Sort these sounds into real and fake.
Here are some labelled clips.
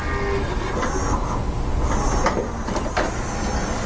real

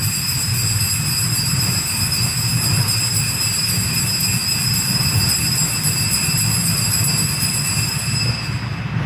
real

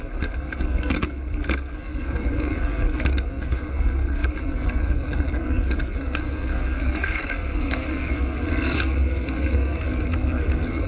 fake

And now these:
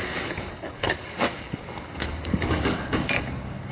fake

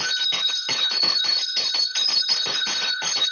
fake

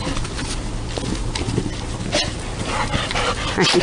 real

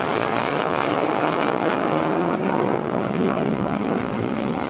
fake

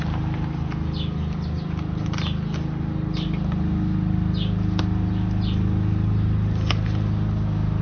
real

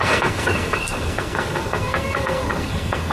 fake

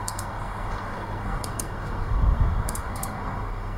fake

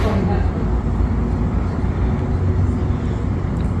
real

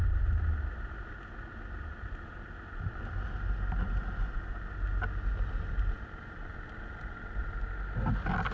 real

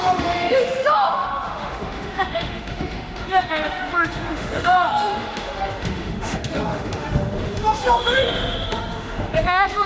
fake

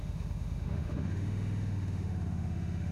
fake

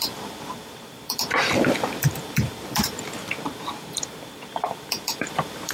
fake